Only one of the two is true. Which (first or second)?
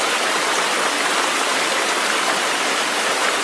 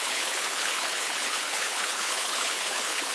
first